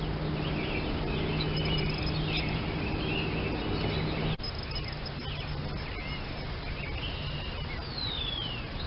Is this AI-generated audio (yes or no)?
no